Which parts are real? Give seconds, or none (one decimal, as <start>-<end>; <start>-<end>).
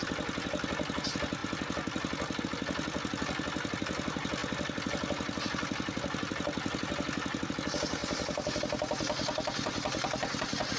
0.0-10.8